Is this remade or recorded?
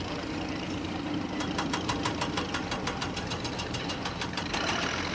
remade